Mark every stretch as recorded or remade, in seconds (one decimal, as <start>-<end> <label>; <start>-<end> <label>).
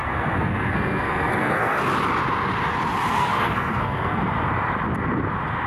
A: 0.0-1.8 remade; 1.8-3.1 recorded; 3.1-4.2 remade; 4.2-5.7 recorded